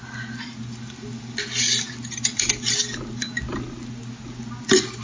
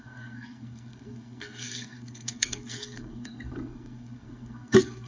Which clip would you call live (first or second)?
first